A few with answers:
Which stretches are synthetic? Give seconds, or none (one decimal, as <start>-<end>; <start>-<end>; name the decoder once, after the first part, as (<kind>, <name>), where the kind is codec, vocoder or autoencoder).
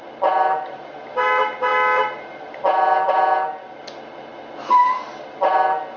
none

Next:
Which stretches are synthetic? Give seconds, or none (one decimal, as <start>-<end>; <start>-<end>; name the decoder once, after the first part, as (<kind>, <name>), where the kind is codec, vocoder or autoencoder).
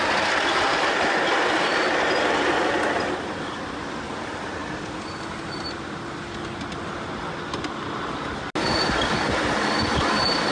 0.7-3.9 (vocoder, BigVGAN v2); 4.6-5.1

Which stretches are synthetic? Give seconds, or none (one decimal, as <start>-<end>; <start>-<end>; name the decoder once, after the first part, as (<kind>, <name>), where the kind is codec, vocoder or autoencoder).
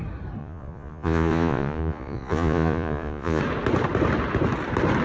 0.4-3.4 (vocoder, Vocos)